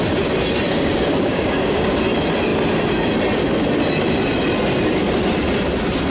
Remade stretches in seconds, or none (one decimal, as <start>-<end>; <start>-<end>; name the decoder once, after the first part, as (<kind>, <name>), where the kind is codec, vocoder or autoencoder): 0.7-2.0 (codec, DAC)